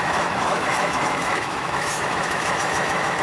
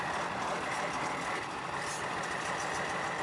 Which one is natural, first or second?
second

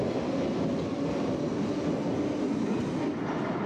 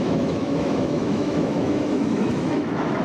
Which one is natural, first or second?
first